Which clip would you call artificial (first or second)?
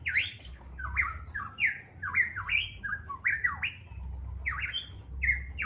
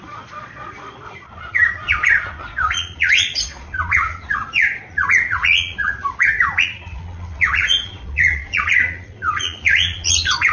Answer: second